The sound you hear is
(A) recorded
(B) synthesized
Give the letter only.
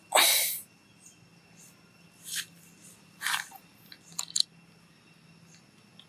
A